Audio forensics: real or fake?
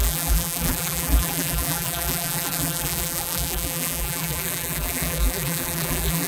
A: fake